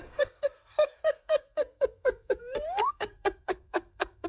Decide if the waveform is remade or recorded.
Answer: remade